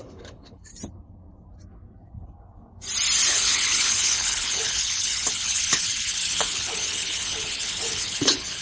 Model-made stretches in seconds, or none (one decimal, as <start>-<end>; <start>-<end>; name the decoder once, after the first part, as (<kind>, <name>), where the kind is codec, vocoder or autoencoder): 0.0-0.7 (codec, HILCodec); 3.3-8.6